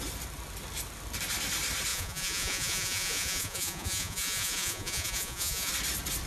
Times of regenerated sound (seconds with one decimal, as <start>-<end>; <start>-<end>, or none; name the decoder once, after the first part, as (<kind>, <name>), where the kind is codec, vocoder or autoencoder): 1.9-5.7 (vocoder, Vocos)